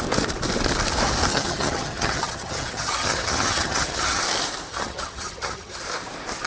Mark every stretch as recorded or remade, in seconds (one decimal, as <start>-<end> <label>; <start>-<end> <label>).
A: 0.0-1.3 recorded; 1.3-4.2 remade; 4.2-4.7 recorded; 4.7-5.8 remade; 5.8-6.5 recorded